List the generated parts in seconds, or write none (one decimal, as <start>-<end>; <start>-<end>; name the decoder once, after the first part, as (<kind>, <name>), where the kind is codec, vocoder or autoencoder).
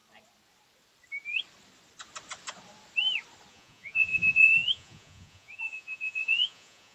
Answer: 3.5-6.9 (vocoder, Vocos)